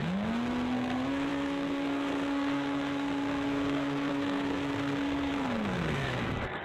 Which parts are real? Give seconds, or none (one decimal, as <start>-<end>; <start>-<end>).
none